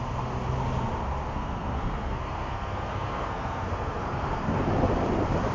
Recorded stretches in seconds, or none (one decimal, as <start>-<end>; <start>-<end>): 0.0-1.3; 4.6-5.5